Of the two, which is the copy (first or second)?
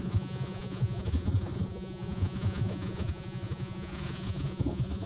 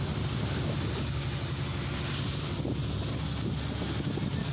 first